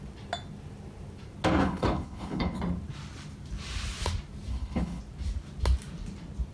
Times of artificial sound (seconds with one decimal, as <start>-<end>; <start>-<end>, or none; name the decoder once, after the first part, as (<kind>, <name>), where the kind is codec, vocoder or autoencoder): 1.6-2.6 (codec, HILCodec); 4.5-5.0